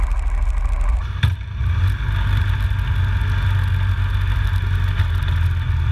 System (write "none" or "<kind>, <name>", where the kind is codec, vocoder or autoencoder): none